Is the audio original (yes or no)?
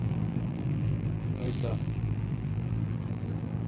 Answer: no